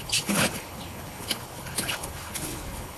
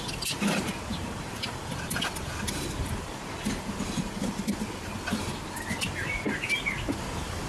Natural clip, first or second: second